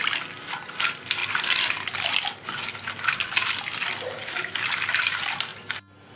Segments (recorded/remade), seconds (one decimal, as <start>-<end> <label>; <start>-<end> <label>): 0.0-6.2 recorded

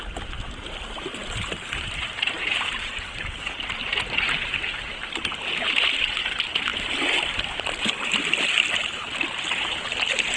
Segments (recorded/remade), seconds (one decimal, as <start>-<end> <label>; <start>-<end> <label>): 0.0-1.1 recorded; 1.1-3.5 remade; 3.5-10.4 recorded

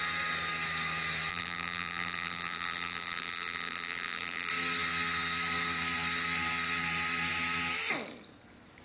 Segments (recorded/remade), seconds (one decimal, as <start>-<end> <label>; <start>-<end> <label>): 0.0-1.3 recorded; 1.3-4.5 remade; 4.5-8.8 recorded

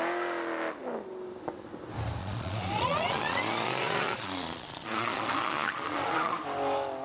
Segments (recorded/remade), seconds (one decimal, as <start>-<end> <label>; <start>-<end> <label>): 0.0-2.2 recorded; 2.2-6.4 remade; 6.4-7.0 recorded

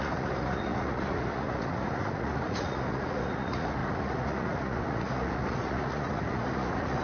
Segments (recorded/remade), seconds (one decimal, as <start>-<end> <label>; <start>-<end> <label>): 0.0-7.0 remade